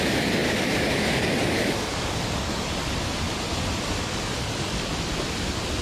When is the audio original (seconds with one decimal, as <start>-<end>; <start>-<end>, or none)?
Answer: 2.8-4.0; 4.9-5.8